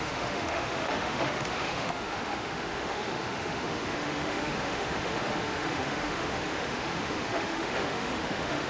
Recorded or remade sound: remade